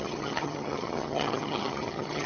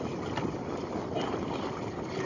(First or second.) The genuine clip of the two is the second